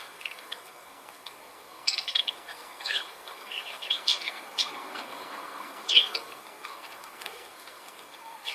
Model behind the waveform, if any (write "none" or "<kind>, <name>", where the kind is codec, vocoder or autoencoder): codec, SNAC